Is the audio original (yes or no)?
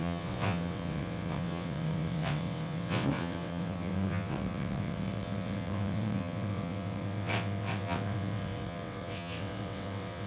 no